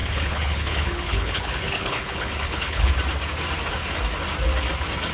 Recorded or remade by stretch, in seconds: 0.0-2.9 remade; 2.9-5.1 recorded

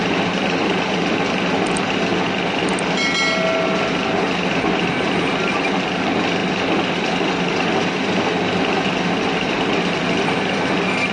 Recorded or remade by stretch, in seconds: 0.0-11.1 recorded

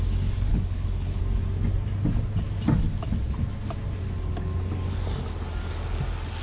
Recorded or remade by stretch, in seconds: 0.0-0.5 recorded; 0.5-1.2 remade; 1.2-6.4 recorded

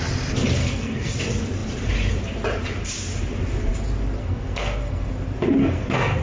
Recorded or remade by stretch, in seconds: 0.0-0.6 recorded; 0.6-1.1 remade; 1.1-4.2 recorded; 4.2-5.1 remade; 5.1-5.6 recorded; 5.6-6.2 remade